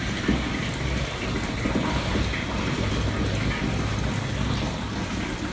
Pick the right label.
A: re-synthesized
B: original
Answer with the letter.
B